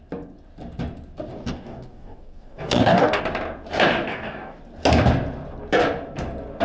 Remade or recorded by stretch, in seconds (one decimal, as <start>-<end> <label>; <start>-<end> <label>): 0.0-1.3 recorded; 1.3-3.2 remade; 3.2-4.1 recorded; 4.1-4.6 remade; 4.6-6.6 recorded